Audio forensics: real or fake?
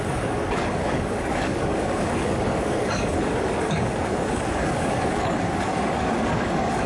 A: fake